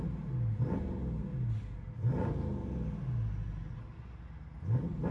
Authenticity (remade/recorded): recorded